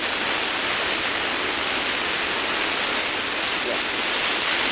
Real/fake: real